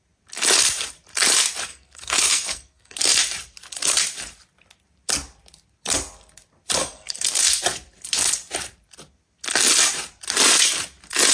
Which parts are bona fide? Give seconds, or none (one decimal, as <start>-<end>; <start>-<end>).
0.0-1.7; 3.0-6.8; 7.6-11.3